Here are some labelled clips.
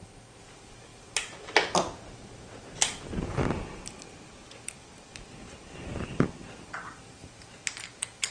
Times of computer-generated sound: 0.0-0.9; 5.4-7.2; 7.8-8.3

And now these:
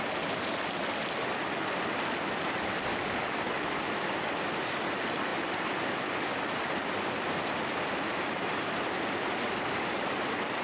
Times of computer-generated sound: none

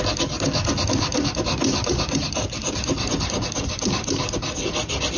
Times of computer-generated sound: 1.1-3.4

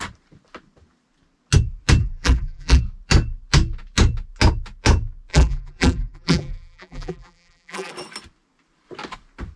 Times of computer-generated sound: 2.0-2.8; 5.3-7.9

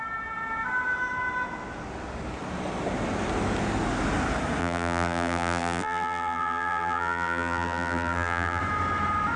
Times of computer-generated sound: 4.6-8.6